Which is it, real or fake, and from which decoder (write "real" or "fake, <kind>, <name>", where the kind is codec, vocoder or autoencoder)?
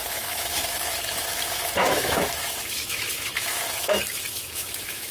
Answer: fake, autoencoder, DAC-VAE